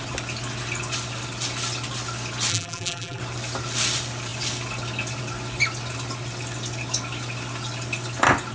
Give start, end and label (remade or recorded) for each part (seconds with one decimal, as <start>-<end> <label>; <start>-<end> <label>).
0.0-2.5 recorded; 2.5-3.2 remade; 3.2-8.5 recorded

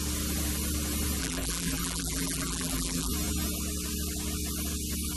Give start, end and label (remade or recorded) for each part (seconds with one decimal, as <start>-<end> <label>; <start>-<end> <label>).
0.0-1.2 recorded; 1.2-3.1 remade; 3.1-5.2 recorded

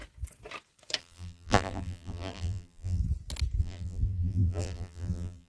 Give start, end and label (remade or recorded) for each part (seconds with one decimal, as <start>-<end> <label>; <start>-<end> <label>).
0.0-1.0 recorded; 1.0-3.0 remade; 3.0-3.6 recorded; 3.6-5.5 remade

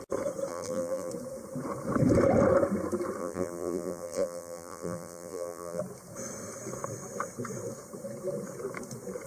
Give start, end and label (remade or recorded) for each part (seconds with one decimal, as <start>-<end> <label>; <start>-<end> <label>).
0.0-0.5 recorded; 0.5-1.1 remade; 1.1-3.2 recorded; 3.2-5.8 remade; 5.8-9.3 recorded